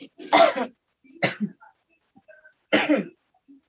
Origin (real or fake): real